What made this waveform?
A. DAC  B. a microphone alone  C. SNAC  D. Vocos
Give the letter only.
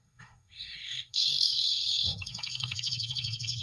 C